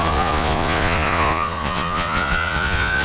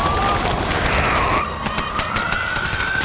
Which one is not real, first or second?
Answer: first